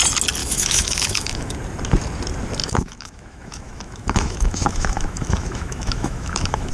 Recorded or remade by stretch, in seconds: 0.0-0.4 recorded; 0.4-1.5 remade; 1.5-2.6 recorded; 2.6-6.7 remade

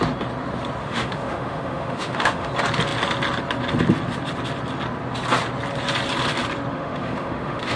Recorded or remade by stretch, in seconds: 0.0-0.8 recorded; 0.8-2.5 remade; 2.5-6.7 recorded; 6.7-7.8 remade

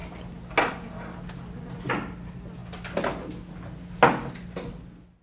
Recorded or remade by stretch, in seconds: 0.0-5.2 recorded

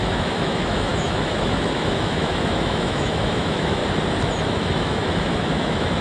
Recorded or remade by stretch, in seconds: 0.0-3.8 remade; 3.8-4.4 recorded; 4.4-6.0 remade

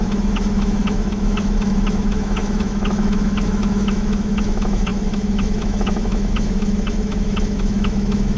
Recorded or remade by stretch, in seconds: 0.0-8.4 remade